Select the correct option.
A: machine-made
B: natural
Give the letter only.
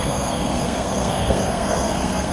A